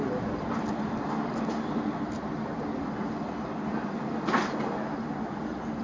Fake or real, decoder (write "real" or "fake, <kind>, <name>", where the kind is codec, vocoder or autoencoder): real